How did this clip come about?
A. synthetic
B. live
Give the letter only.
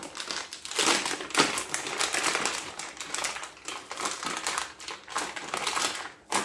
B